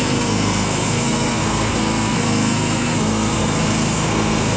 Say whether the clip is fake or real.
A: fake